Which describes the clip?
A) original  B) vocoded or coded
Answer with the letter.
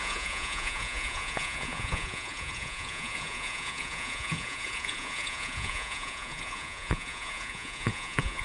B